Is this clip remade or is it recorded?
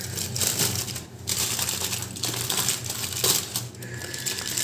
recorded